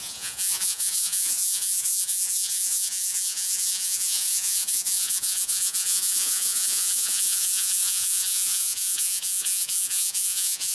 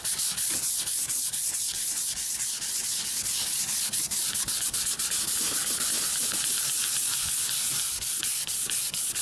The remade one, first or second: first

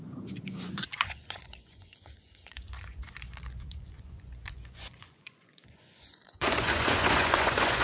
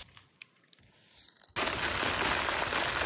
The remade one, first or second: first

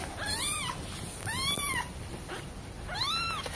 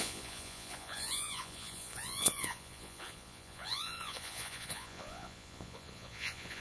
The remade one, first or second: second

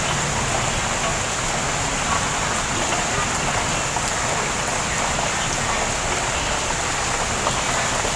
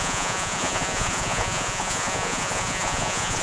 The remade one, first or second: second